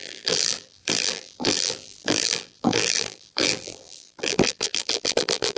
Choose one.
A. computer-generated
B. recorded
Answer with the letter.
A